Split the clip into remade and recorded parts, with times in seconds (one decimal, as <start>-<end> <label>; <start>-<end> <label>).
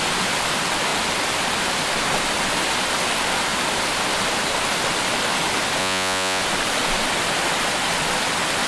0.0-5.8 recorded; 5.8-6.4 remade; 6.4-8.7 recorded